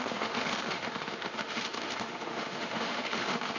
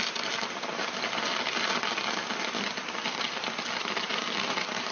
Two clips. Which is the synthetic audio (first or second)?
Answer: first